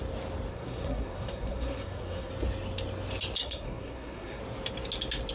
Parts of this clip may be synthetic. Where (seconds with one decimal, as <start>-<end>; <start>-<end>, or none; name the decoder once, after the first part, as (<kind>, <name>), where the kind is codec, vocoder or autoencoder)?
0.5-2.3 (codec, SNAC); 3.4-4.4